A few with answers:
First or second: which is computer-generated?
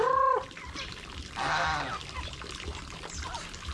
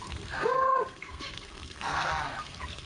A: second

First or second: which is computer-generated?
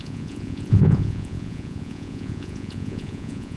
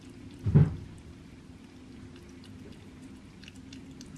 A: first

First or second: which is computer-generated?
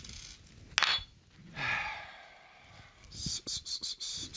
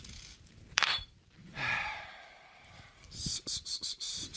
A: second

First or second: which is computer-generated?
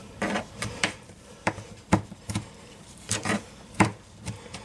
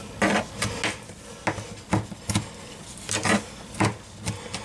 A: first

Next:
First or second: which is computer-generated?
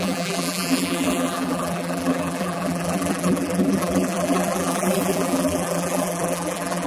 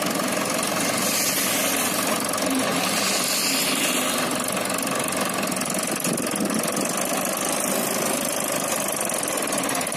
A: first